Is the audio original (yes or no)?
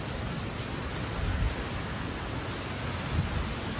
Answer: yes